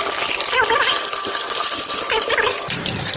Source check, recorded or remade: recorded